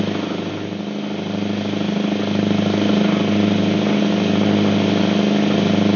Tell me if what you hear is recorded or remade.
recorded